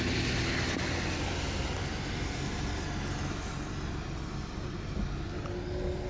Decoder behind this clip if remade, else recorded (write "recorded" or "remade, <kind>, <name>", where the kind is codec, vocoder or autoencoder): recorded